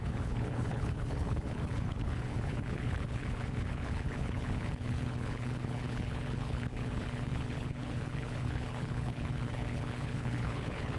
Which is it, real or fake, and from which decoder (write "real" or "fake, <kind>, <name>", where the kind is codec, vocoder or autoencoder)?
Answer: fake, codec, HILCodec